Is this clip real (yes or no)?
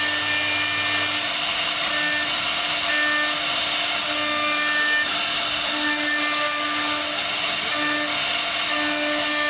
yes